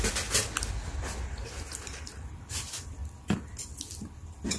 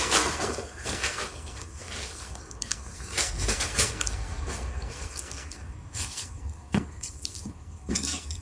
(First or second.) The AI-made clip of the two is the second